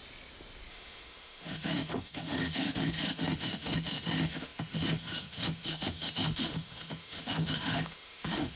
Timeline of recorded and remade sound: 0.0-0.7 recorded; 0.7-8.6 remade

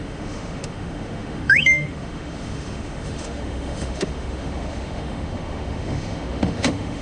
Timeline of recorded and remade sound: 0.0-7.0 remade

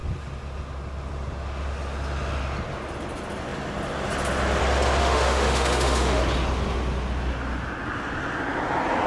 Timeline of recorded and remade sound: 0.0-5.0 recorded; 5.0-6.2 remade; 6.2-9.1 recorded